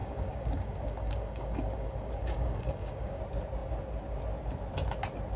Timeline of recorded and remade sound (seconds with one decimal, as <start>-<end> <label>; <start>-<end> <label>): 0.0-3.2 remade; 3.2-5.4 recorded